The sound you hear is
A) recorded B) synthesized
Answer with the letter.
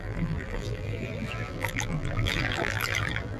B